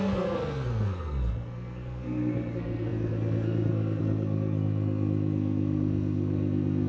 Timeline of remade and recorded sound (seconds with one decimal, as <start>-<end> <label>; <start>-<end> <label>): 0.0-6.9 remade